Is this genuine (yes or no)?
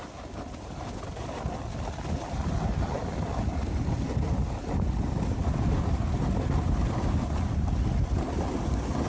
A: yes